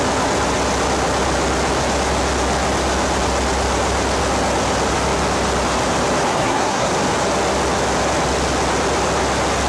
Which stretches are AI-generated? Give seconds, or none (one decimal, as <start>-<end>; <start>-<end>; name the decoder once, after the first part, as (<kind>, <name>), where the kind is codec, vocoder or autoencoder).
6.3-6.9 (codec, SNAC)